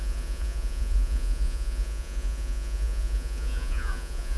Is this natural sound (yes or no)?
no